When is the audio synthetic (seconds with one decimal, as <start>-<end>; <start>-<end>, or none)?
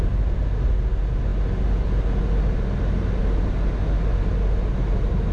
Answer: none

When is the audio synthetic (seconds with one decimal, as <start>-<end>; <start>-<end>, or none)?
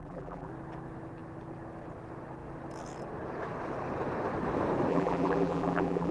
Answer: 0.0-0.5; 4.9-6.1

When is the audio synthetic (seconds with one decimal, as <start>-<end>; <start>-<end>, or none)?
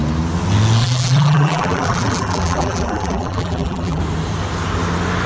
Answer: 0.8-4.0